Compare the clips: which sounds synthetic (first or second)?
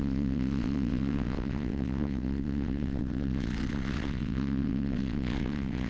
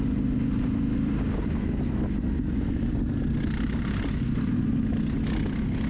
first